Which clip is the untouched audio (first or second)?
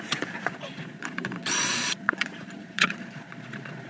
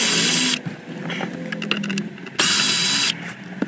second